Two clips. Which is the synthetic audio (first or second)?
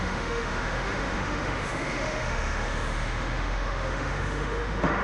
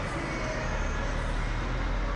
first